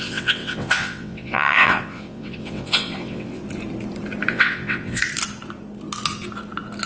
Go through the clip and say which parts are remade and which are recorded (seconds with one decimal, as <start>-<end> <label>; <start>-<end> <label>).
0.0-3.4 remade; 3.4-4.3 recorded; 4.3-5.0 remade; 5.0-6.9 recorded